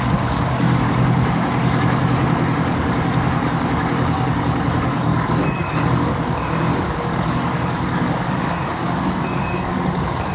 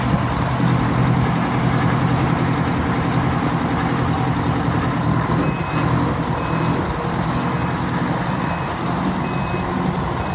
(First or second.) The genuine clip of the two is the second